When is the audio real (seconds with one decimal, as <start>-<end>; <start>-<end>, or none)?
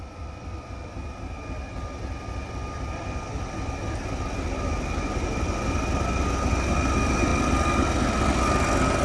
0.0-9.0